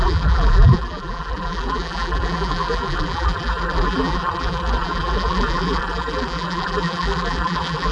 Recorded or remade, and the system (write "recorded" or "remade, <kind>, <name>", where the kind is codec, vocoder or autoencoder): remade, vocoder, BigVGAN v2